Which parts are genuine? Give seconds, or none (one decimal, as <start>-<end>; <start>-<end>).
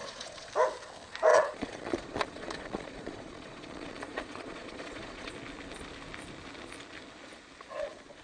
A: 0.5-1.3; 5.3-8.2